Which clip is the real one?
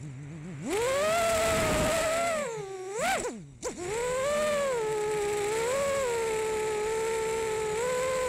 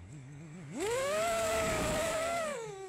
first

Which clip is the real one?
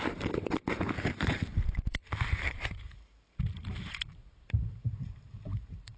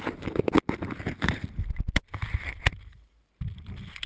second